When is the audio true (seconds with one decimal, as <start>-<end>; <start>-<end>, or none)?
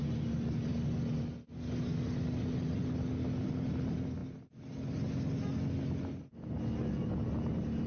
0.0-7.9